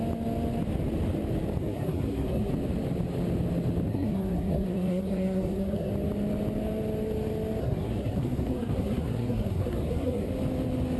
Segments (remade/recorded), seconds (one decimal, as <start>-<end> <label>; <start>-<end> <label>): 0.0-1.6 recorded; 1.6-2.5 remade; 2.5-3.9 recorded; 3.9-5.9 remade; 5.9-7.6 recorded; 7.6-10.3 remade; 10.3-11.0 recorded